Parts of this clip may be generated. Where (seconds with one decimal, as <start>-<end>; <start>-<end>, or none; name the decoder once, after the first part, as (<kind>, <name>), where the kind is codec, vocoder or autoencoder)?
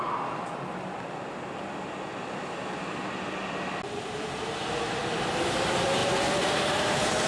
6.0-7.3 (vocoder, BigVGAN v2)